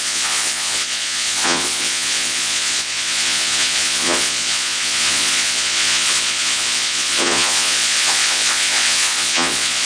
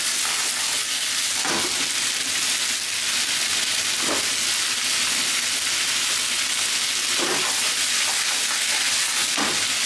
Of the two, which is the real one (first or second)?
second